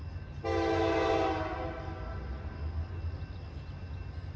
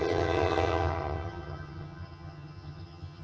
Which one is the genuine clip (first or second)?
first